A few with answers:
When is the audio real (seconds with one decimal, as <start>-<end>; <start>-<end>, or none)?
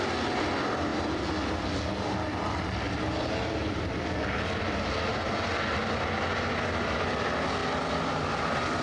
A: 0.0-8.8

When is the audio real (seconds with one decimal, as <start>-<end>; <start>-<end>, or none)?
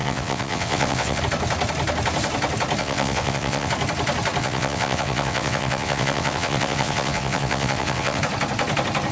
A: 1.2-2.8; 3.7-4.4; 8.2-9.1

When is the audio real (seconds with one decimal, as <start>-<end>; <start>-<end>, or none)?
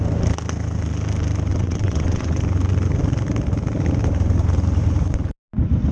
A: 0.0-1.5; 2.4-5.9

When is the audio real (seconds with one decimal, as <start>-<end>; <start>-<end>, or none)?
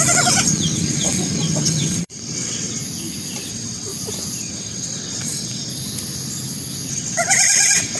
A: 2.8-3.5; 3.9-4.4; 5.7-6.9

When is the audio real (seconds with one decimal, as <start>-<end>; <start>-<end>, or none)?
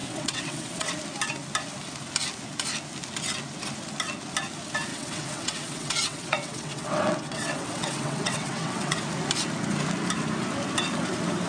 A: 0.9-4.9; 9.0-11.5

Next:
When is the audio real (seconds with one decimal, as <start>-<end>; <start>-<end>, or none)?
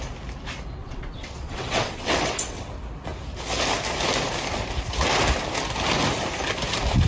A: 0.0-0.8; 2.7-7.1